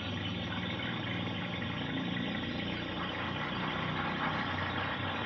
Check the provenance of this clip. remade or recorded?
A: recorded